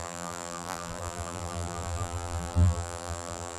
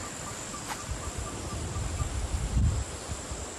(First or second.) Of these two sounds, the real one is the second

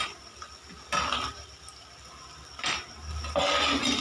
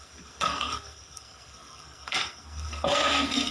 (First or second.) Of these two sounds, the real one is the first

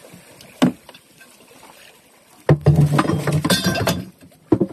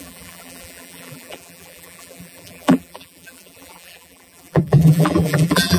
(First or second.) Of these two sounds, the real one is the first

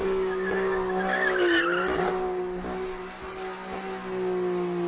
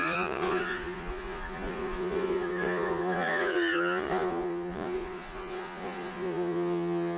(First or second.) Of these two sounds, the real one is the first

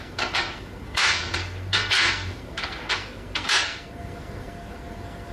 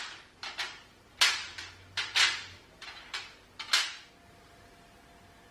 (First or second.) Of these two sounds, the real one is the second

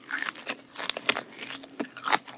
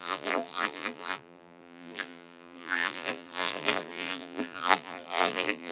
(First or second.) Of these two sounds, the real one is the first